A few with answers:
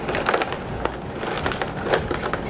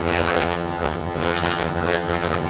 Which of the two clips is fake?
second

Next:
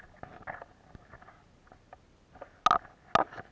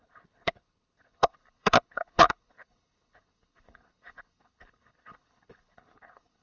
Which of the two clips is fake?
second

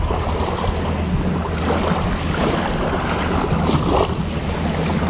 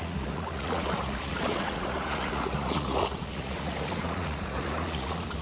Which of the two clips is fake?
second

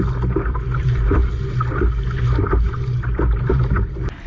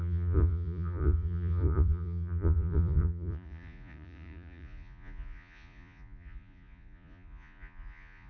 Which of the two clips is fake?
second